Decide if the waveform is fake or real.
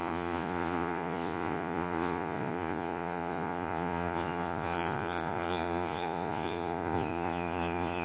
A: fake